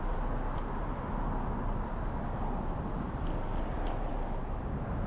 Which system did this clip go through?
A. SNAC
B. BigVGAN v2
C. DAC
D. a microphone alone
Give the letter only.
D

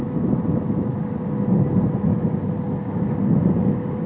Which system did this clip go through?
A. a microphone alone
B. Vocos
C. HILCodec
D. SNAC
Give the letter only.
A